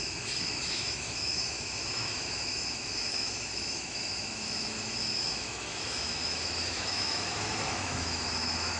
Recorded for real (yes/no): no